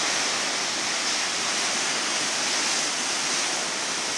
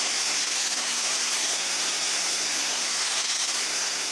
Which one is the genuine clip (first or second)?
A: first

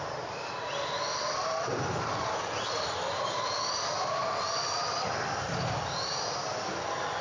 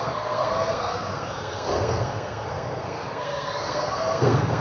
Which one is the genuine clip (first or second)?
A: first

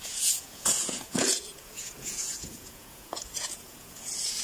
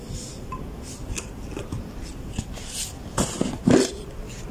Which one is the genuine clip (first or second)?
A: second